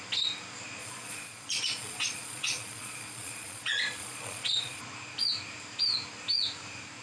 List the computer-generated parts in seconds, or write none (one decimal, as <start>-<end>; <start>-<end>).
0.8-4.8